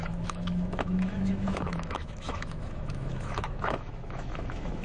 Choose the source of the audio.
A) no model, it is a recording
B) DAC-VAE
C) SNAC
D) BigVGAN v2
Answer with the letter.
B